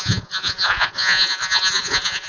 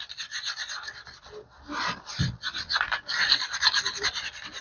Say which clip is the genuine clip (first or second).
second